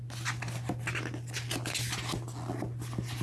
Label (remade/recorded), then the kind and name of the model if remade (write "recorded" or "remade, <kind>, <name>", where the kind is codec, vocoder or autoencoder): recorded